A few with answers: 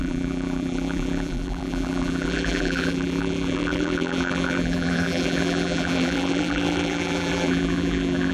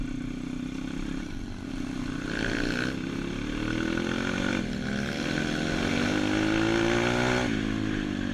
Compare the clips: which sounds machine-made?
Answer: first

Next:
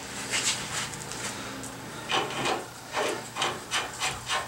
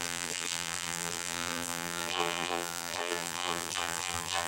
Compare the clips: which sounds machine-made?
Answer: second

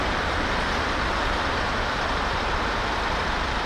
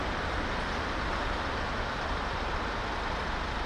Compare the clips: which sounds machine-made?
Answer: first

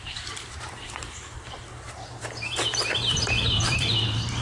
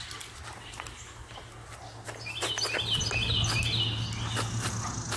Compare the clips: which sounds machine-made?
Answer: first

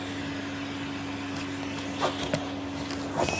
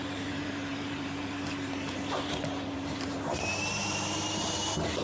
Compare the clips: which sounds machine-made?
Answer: second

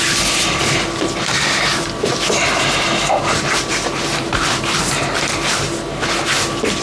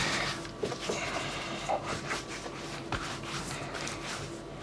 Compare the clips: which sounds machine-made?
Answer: first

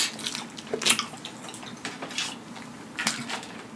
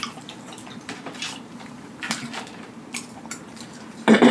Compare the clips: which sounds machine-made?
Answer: second